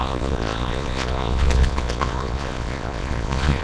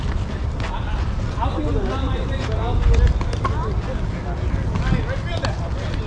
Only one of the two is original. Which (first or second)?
second